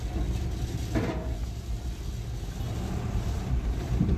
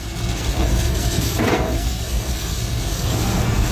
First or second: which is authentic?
first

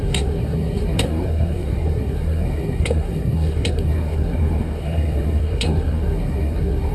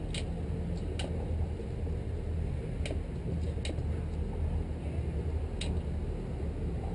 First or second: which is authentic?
second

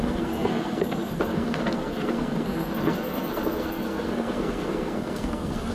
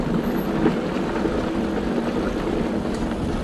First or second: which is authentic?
second